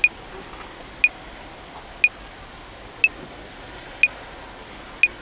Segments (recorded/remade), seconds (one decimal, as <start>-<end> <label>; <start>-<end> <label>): 0.0-5.2 recorded